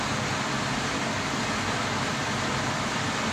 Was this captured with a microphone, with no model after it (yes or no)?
yes